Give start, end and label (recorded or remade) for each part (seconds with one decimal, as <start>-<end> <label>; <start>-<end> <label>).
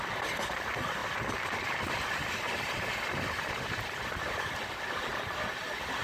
0.0-5.1 remade; 5.1-6.0 recorded